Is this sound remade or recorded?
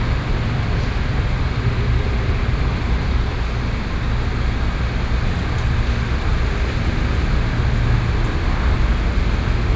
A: recorded